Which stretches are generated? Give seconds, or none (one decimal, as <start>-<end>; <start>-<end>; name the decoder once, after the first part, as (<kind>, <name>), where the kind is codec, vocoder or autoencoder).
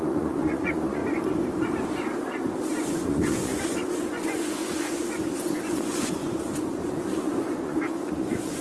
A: 0.0-1.0 (vocoder, Vocos); 2.9-8.6